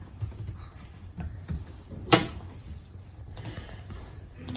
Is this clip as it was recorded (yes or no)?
no